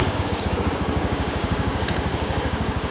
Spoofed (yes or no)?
yes